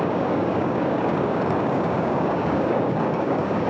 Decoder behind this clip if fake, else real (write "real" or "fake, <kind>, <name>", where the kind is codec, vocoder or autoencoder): fake, codec, DAC